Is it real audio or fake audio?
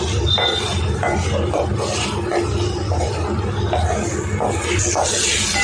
real